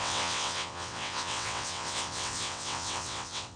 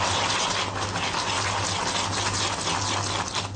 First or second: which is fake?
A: first